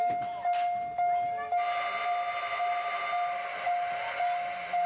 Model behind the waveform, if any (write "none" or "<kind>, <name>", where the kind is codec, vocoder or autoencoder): none